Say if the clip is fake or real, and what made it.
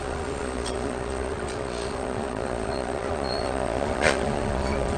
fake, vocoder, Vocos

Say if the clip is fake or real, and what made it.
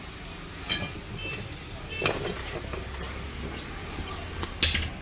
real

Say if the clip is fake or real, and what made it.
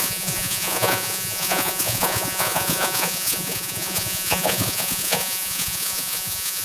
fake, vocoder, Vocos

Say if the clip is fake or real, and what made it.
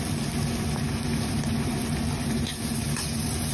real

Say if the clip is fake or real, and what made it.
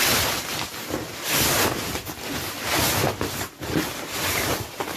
real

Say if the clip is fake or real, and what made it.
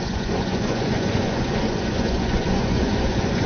fake, vocoder, Vocos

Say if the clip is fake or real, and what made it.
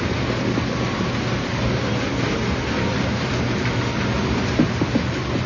real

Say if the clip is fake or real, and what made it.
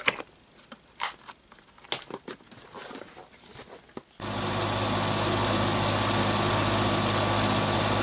real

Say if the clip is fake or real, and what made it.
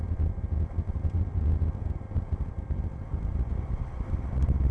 real